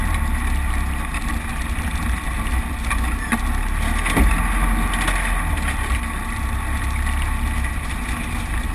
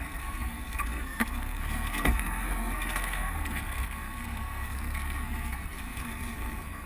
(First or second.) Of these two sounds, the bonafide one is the first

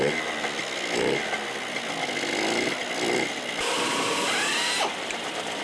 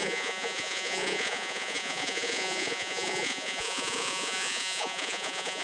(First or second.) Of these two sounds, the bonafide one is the first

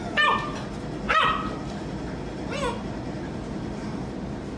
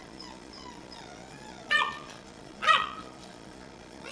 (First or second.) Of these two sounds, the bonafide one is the first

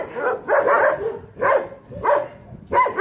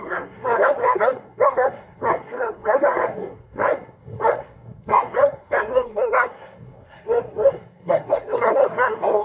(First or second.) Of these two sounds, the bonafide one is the first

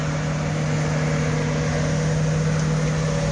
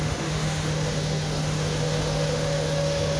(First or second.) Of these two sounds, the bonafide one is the first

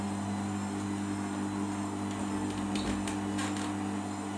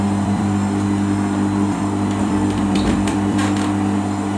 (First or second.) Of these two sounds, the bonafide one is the first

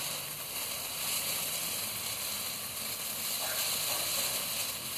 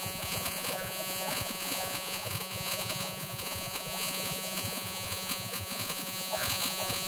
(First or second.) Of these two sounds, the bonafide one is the first